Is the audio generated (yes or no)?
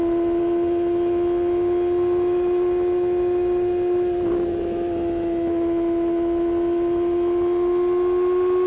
no